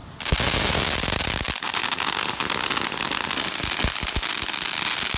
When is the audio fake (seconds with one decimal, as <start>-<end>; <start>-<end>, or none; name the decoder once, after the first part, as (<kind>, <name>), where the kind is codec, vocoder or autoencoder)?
none